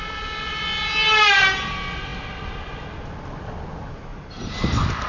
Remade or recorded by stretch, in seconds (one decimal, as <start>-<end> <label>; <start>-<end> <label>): 0.0-4.1 recorded; 4.1-5.1 remade